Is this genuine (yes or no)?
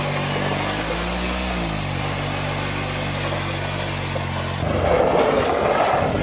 yes